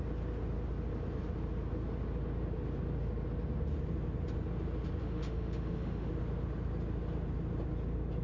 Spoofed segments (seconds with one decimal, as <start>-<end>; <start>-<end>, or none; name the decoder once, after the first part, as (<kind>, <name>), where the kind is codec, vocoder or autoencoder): 5.0-6.1 (autoencoder, DAC-VAE)